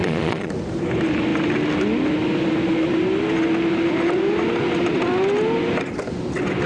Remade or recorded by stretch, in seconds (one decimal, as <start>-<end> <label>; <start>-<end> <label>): 0.0-0.5 remade; 0.5-6.7 recorded